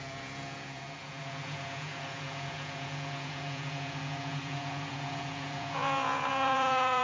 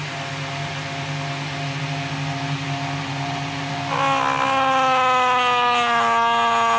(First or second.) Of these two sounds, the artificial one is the first